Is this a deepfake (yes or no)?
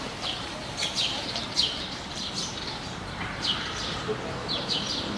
yes